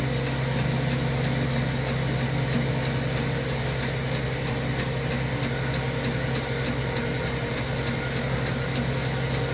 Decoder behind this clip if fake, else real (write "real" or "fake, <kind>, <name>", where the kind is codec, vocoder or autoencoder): real